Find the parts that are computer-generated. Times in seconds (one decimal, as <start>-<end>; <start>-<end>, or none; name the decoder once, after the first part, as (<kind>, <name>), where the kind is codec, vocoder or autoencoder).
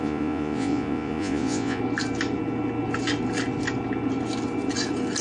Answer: 0.0-1.8 (vocoder, Vocos)